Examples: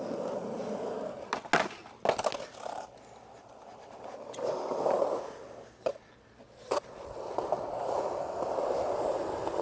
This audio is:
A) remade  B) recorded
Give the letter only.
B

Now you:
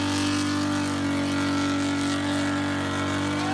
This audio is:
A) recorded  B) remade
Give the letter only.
A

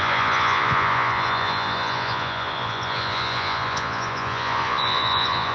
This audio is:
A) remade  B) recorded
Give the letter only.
A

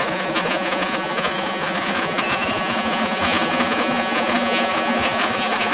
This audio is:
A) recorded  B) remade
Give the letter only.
B